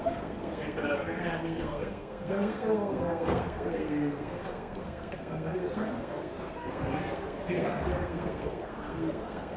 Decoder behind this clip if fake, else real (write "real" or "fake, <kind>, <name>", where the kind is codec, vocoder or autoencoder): fake, codec, SNAC